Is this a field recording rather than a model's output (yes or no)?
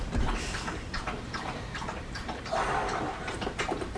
no